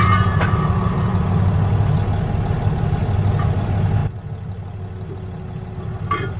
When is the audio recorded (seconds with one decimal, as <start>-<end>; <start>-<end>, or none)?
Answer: 0.0-6.4